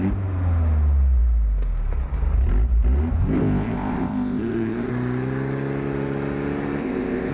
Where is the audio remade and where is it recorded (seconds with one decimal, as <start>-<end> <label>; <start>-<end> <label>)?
0.0-3.2 recorded; 3.2-4.9 remade; 4.9-6.8 recorded; 6.8-7.3 remade